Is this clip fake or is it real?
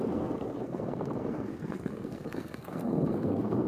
fake